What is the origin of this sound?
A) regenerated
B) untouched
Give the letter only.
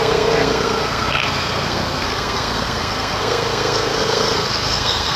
A